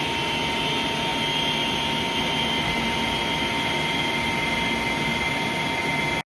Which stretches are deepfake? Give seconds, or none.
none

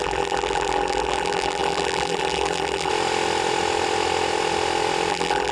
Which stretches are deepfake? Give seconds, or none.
0.0-2.9 (vocoder, BigVGAN v2); 5.1-5.5